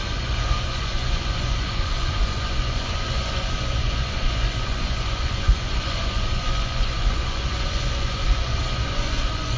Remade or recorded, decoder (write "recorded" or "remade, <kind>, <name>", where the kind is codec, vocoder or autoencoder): remade, vocoder, Vocos